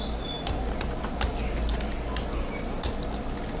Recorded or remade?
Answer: recorded